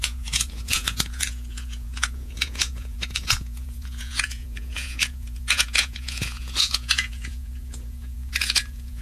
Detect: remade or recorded remade